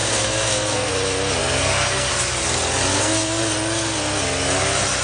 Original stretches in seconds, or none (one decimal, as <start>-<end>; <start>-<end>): 0.9-1.4; 2.1-2.9; 3.4-5.0